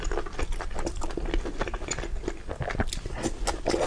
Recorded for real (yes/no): yes